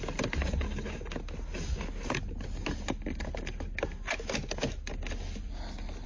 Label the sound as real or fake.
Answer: real